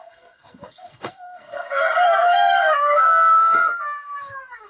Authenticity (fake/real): fake